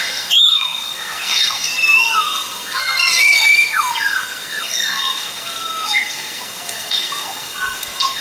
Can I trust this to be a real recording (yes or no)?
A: no